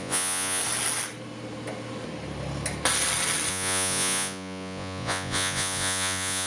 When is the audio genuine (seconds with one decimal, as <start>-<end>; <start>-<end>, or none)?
0.6-3.5